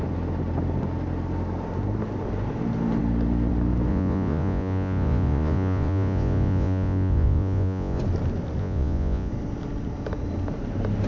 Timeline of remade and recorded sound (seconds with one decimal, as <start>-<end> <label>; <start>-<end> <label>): 0.0-3.9 recorded; 3.9-8.0 remade; 8.0-8.6 recorded; 8.6-9.3 remade; 9.3-11.1 recorded